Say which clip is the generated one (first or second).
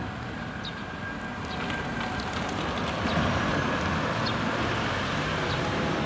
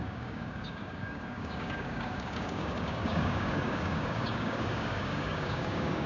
second